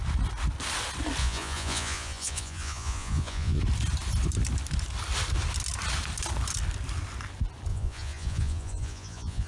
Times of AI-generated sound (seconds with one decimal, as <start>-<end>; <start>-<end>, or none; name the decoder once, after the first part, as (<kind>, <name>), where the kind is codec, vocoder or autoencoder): 1.2-3.6 (vocoder, Vocos); 7.7-9.5